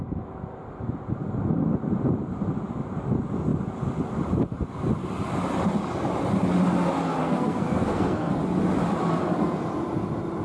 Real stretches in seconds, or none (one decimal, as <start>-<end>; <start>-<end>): 0.0-7.2; 8.3-10.4